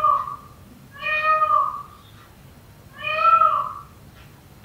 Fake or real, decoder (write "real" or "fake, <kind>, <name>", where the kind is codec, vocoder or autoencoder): real